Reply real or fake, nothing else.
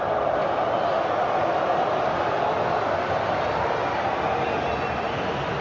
real